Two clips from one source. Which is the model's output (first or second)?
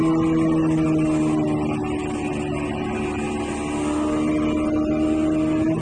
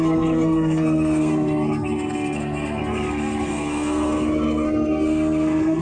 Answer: second